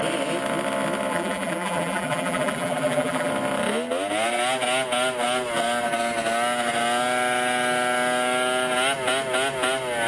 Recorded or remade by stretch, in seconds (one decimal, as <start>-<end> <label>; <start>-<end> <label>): 0.0-1.1 recorded; 1.1-3.3 remade; 3.3-10.1 recorded